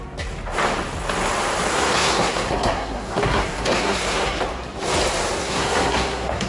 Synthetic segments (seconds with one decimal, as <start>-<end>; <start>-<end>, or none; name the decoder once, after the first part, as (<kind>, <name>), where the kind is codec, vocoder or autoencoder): 1.7-4.4 (codec, SNAC); 5.4-6.5